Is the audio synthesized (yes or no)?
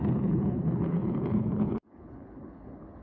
yes